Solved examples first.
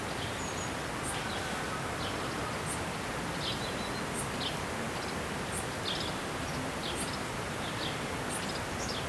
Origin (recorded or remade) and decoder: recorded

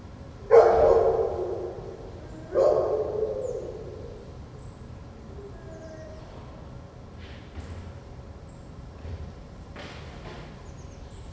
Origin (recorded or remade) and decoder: recorded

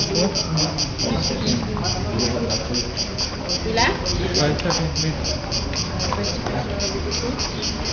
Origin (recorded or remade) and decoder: recorded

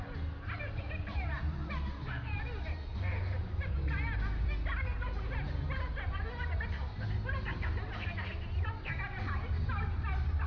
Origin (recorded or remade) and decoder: recorded